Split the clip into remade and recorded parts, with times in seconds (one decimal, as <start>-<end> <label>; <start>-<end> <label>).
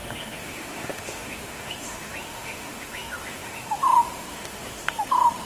0.0-5.5 remade